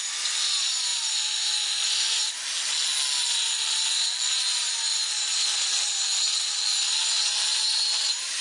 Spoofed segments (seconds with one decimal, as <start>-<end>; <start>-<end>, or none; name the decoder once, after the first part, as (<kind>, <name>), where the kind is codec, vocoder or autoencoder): none